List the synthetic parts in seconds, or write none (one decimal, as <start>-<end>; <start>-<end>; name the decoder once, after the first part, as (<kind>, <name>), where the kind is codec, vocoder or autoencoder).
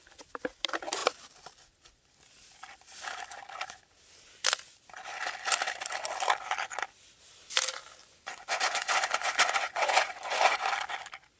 8.0-10.7 (vocoder, Vocos)